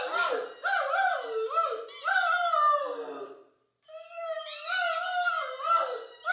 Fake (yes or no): no